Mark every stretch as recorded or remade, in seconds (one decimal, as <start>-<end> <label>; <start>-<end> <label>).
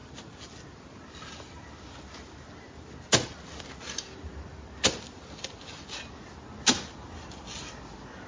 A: 0.0-8.3 recorded